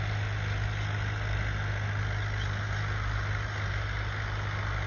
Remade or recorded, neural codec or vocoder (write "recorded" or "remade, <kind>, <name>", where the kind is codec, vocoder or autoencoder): recorded